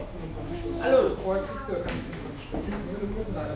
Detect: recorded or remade remade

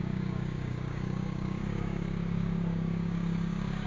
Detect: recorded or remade remade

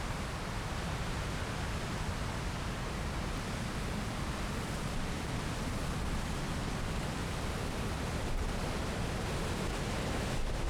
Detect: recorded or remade recorded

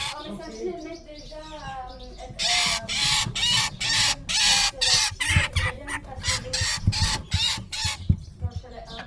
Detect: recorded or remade recorded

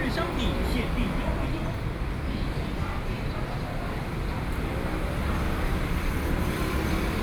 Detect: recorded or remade remade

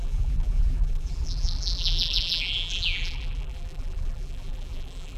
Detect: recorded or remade remade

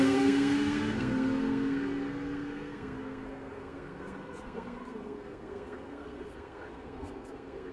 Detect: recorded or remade remade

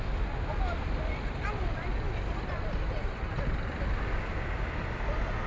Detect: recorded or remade recorded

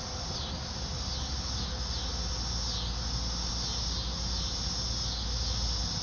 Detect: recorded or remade recorded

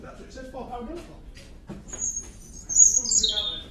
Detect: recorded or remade recorded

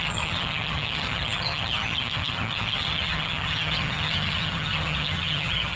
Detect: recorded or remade remade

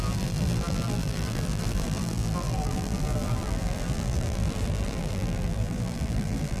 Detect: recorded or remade remade